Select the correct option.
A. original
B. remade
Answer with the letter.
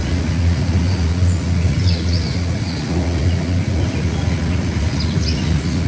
B